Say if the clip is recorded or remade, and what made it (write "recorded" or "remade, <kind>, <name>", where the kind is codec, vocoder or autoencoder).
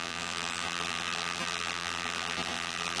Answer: remade, vocoder, BigVGAN v2